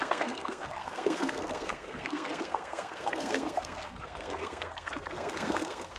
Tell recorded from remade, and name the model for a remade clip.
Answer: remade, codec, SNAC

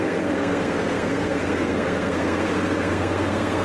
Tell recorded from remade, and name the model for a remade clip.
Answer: remade, codec, SNAC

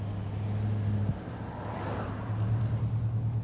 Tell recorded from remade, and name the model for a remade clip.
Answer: recorded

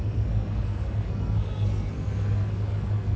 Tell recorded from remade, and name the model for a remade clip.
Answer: remade, codec, SNAC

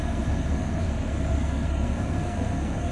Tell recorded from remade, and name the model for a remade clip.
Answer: remade, codec, SNAC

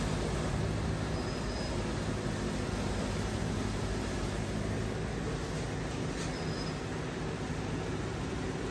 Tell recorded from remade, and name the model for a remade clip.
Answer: recorded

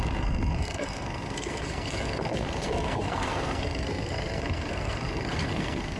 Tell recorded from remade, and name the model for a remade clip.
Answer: remade, codec, SNAC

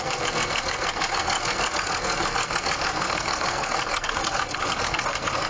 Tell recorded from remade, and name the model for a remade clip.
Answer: remade, codec, SNAC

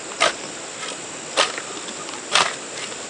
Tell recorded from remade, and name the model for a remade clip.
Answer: recorded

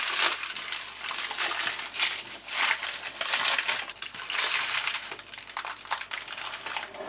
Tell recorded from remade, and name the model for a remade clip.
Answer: recorded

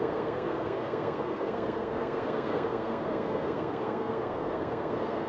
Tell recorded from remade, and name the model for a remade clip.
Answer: remade, codec, SNAC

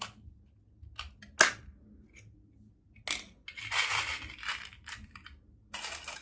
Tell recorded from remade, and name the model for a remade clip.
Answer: recorded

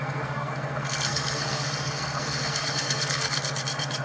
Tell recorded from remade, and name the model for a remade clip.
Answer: remade, codec, SNAC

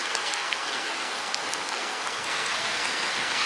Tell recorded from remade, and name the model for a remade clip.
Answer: remade, codec, SNAC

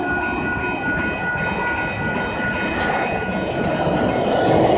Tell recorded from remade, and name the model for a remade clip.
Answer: recorded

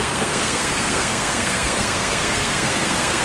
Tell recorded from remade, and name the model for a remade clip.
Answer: remade, codec, SNAC